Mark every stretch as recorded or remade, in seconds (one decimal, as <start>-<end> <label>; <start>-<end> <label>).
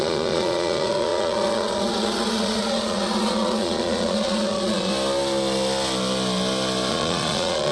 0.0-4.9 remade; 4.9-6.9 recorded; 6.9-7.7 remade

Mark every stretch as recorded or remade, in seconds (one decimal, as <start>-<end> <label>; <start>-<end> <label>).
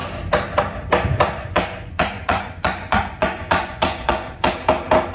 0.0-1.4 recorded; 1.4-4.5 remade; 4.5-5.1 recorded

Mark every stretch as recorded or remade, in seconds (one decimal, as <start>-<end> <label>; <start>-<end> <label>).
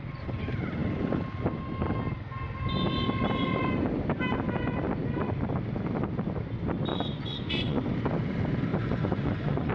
0.0-6.9 recorded; 6.9-7.8 remade; 7.8-8.7 recorded; 8.7-9.7 remade